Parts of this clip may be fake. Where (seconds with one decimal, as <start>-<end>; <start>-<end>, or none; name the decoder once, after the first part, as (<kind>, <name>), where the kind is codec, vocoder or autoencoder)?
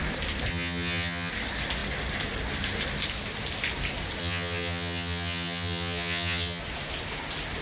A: 0.5-1.3 (vocoder, HiFi-GAN); 4.2-6.6